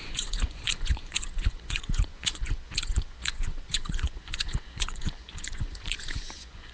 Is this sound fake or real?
fake